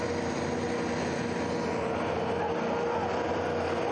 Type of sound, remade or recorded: recorded